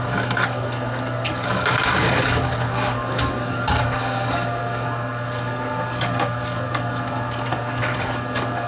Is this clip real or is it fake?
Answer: fake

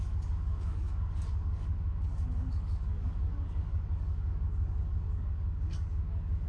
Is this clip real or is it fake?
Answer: fake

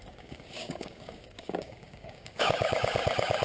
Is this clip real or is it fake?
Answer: fake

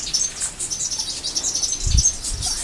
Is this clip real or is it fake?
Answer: real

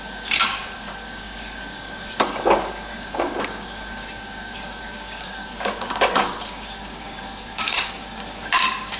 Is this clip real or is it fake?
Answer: fake